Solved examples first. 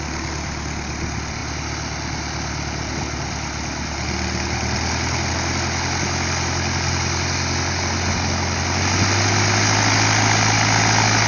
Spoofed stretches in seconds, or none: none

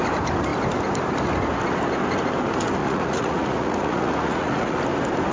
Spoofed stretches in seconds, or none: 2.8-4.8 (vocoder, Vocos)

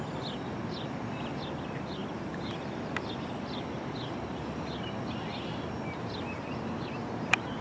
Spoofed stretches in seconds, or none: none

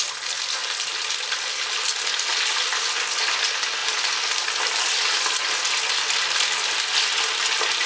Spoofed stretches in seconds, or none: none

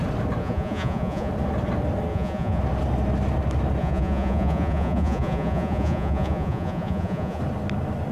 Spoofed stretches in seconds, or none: 0.4-1.3 (vocoder, Vocos); 2.1-2.6; 3.8-7.4

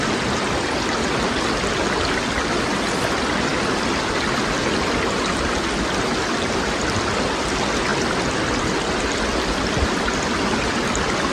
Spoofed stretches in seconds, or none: none

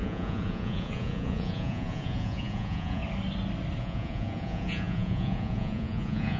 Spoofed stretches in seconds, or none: 0.0-3.0 (vocoder, Vocos); 3.8-6.4

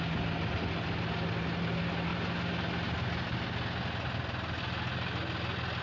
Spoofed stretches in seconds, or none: none